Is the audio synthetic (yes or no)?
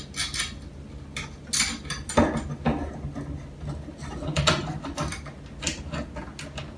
no